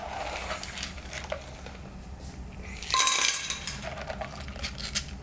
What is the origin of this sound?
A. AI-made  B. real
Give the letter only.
B